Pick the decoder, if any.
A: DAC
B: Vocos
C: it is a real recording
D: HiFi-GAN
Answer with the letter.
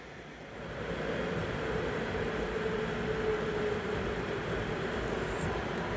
C